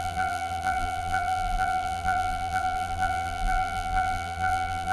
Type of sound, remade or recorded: remade